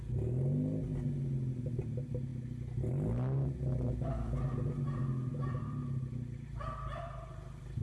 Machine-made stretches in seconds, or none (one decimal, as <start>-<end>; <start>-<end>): none

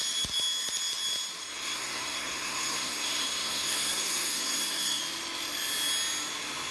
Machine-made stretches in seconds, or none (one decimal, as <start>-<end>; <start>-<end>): 1.4-5.0